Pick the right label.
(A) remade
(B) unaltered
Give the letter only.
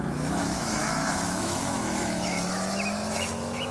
A